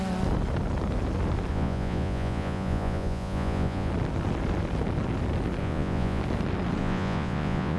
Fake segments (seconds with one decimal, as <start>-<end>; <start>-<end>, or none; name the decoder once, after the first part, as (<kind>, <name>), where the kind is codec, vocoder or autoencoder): 1.5-3.9 (vocoder, Vocos); 5.6-6.2; 6.8-7.8

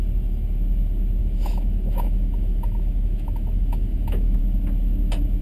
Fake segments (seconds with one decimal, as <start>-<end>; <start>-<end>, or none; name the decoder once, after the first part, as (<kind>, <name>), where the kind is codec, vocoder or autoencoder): 1.2-4.4 (autoencoder, DAC-VAE)

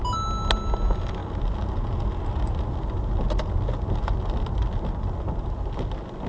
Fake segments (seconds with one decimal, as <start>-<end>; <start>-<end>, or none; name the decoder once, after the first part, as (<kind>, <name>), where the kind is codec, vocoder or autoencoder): none

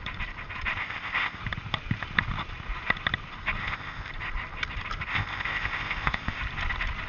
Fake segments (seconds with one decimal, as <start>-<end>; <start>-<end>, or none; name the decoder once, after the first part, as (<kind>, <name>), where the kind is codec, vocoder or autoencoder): 0.8-1.4 (codec, ZipCodec); 3.6-4.1; 5.1-6.4

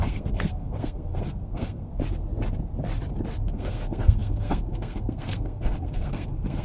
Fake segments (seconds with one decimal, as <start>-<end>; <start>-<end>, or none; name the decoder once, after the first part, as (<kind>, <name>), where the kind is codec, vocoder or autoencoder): 0.0-1.9 (codec, SNAC); 3.5-6.6

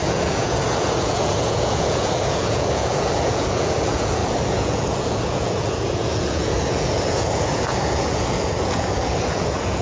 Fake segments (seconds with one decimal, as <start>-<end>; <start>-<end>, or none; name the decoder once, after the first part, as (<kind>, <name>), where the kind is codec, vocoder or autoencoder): 0.0-9.8 (vocoder, Vocos)